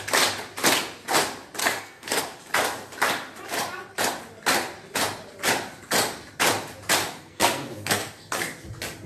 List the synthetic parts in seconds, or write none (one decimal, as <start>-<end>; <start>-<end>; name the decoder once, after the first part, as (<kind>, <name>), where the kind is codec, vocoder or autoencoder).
1.6-2.2 (codec, SNAC); 7.0-8.3